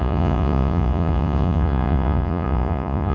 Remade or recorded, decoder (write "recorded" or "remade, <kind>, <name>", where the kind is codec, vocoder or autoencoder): remade, vocoder, Vocos